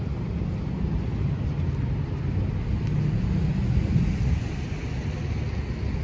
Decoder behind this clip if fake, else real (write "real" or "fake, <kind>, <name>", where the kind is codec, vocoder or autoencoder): real